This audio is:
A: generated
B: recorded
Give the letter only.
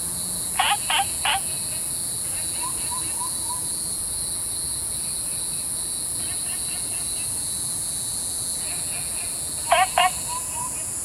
A